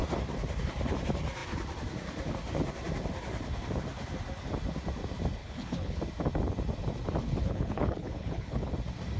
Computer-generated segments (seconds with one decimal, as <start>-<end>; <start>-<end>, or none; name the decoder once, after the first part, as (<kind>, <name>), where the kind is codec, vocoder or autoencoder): 5.4-6.0 (codec, HILCodec); 7.3-8.7